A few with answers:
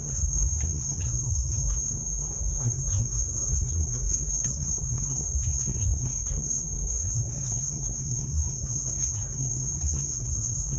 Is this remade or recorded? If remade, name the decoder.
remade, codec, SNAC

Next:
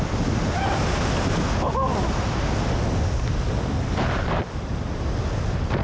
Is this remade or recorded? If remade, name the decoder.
recorded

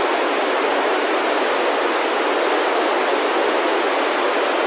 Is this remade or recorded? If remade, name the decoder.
recorded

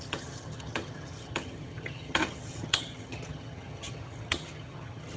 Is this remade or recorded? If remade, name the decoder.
remade, vocoder, HiFi-GAN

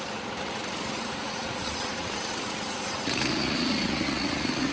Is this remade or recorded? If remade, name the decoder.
remade, vocoder, Vocos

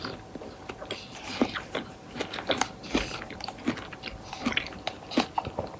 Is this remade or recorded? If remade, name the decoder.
recorded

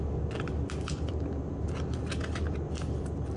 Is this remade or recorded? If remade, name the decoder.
recorded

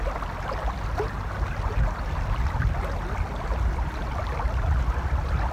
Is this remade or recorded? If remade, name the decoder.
recorded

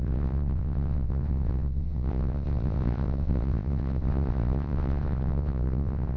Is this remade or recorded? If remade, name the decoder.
remade, vocoder, WaveNeXt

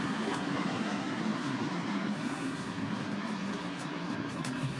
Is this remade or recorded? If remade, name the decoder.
remade, codec, SNAC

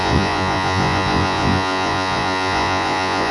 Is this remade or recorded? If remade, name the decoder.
remade, vocoder, Vocos